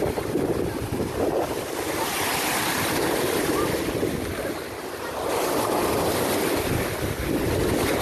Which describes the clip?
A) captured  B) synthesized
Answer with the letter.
A